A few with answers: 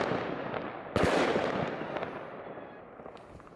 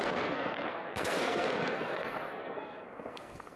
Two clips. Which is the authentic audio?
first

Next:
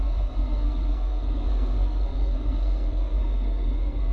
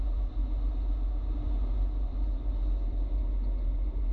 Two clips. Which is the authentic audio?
second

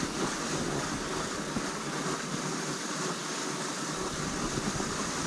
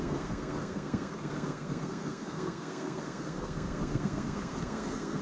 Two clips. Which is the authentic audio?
first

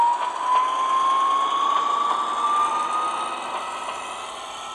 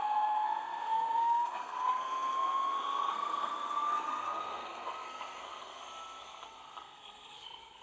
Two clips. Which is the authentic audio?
first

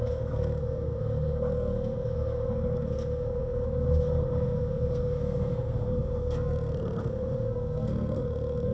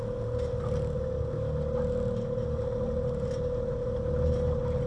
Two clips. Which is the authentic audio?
second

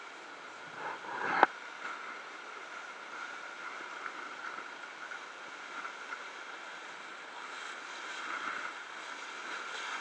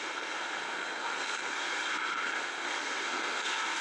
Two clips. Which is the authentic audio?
first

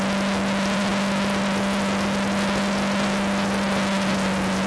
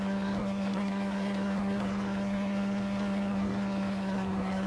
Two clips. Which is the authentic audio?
first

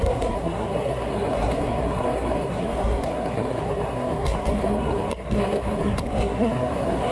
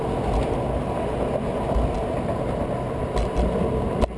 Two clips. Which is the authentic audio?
second